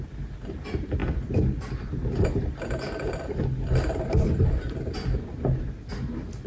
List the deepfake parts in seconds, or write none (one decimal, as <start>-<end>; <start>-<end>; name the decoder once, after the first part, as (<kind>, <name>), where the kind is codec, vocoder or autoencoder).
none